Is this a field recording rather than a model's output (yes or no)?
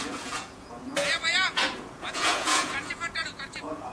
no